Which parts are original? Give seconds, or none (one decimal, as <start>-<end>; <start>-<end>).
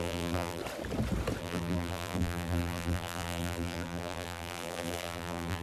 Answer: 0.6-1.4